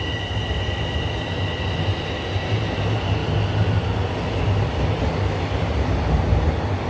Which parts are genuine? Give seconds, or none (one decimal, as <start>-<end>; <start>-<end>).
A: 0.0-6.9

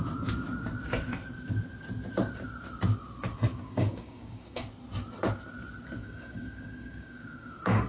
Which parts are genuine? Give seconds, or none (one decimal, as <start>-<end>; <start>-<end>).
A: 0.0-3.5; 4.7-6.0